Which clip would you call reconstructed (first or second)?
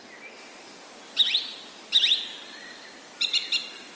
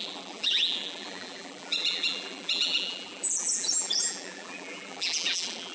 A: second